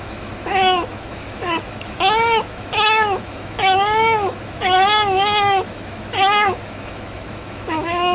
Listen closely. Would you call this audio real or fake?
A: fake